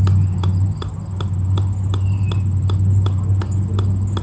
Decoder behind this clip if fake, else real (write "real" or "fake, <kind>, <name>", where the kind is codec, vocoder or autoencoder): real